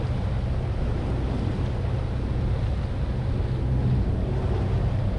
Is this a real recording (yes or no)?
yes